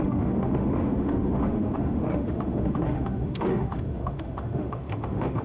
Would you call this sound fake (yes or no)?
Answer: yes